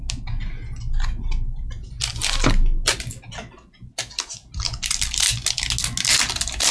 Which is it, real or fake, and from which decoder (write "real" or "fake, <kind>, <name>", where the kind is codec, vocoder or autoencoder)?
real